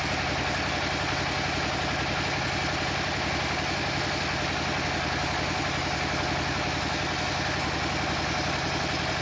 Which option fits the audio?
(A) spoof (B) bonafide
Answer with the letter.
B